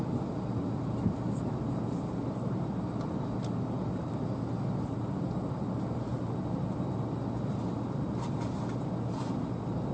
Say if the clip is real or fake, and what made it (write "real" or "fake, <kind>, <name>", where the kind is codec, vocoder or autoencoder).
real